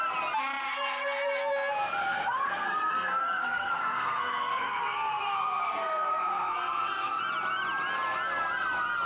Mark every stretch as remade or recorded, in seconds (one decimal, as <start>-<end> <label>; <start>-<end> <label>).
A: 0.0-0.6 recorded; 0.6-1.4 remade; 1.4-2.0 recorded; 2.0-7.2 remade; 7.2-9.1 recorded